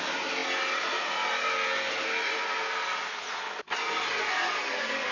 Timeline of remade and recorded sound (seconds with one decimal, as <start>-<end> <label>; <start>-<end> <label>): 0.0-5.1 recorded

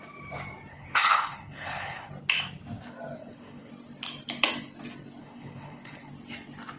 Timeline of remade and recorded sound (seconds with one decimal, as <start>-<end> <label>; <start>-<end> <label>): 0.0-0.7 recorded; 0.7-2.1 remade; 2.1-3.2 recorded; 3.2-3.7 remade; 3.7-5.2 recorded; 5.2-6.1 remade; 6.1-6.8 recorded

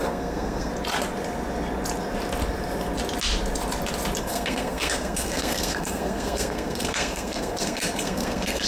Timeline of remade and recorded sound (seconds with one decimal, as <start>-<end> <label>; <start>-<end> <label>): 0.0-0.7 remade; 0.7-4.2 recorded; 4.2-8.7 remade

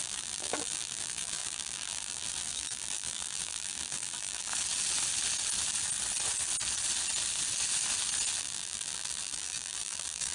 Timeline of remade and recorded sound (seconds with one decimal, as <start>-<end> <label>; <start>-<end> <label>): 0.0-4.5 remade; 4.5-8.4 recorded; 8.4-10.3 remade

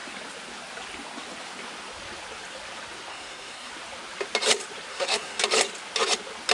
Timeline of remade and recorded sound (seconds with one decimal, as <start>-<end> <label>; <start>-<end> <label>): 0.0-3.1 recorded; 3.1-3.7 remade; 3.7-4.9 recorded; 4.9-5.4 remade; 5.4-6.5 recorded

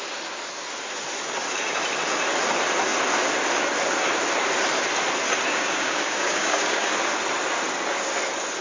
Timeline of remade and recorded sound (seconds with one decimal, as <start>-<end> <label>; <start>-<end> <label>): 0.0-5.5 recorded; 5.5-6.9 remade; 6.9-8.6 recorded